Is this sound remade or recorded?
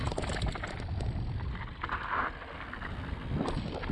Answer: recorded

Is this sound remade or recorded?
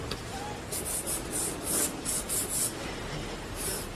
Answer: recorded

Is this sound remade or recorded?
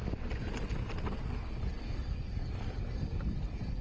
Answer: recorded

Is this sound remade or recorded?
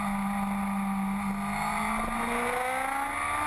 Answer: recorded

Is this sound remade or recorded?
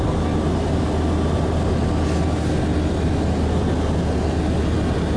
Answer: recorded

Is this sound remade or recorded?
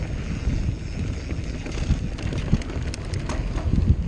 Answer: recorded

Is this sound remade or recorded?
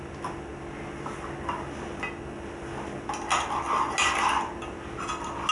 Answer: recorded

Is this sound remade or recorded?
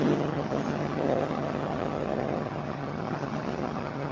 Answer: remade